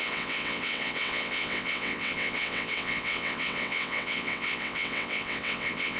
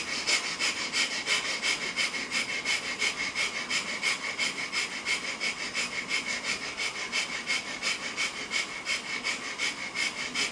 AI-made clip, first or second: first